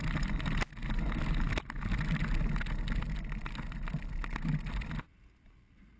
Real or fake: real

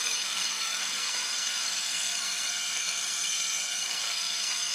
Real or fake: fake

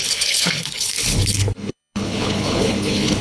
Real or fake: fake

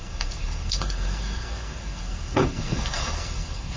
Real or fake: fake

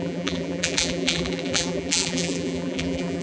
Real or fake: fake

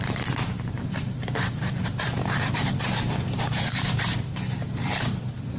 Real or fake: fake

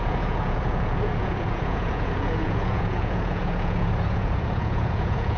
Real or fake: fake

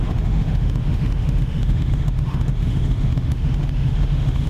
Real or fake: fake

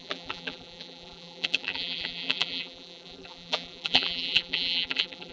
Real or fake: fake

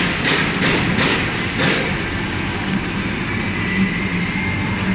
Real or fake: real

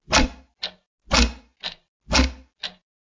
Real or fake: real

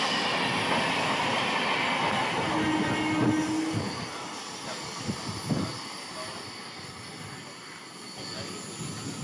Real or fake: real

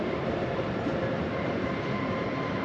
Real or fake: real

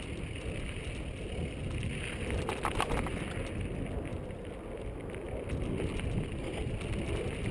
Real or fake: real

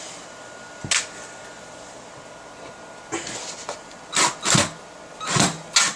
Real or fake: real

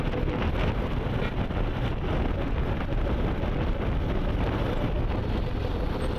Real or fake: real